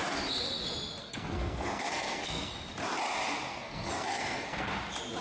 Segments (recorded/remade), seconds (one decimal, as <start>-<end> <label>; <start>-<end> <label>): 0.0-1.0 recorded; 1.0-2.5 remade; 2.5-3.5 recorded; 3.5-4.7 remade; 4.7-5.2 recorded